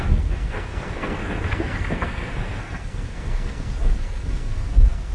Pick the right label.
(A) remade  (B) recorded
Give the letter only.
A